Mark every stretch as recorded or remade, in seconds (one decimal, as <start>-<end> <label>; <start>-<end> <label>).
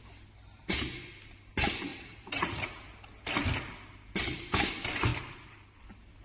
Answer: 0.0-1.9 recorded; 1.9-2.7 remade; 2.7-6.2 recorded